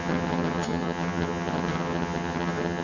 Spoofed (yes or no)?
yes